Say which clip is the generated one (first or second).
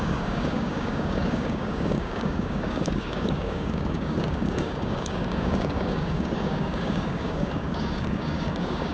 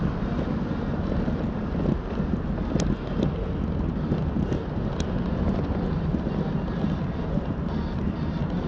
first